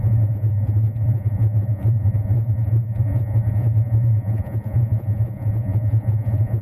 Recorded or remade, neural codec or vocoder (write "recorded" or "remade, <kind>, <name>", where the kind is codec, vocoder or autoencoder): remade, vocoder, Vocos